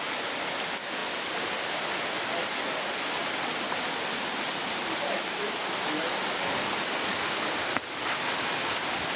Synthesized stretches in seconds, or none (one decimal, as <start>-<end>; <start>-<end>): none